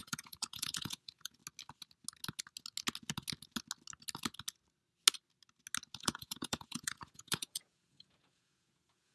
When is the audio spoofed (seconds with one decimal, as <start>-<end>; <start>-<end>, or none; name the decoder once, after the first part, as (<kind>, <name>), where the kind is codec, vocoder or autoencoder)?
0.0-1.4 (vocoder, Vocos); 6.0-9.1